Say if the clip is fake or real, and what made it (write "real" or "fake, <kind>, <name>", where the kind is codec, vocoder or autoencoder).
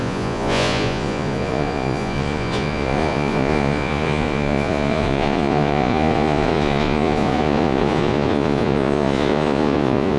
fake, vocoder, Vocos